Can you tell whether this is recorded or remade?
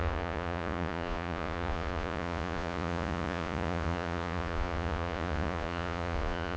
remade